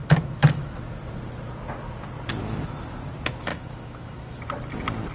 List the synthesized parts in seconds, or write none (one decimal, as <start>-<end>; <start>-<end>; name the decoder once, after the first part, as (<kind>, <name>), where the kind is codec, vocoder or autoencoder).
0.0-0.7 (autoencoder, DAC-VAE); 3.5-4.4